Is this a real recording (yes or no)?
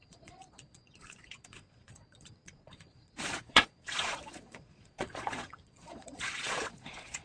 no